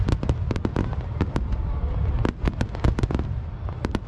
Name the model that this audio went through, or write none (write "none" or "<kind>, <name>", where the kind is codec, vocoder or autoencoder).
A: none